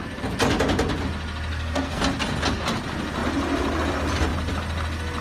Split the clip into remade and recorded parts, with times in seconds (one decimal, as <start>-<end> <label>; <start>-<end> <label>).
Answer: 0.0-1.5 recorded; 1.5-2.0 remade; 2.0-5.2 recorded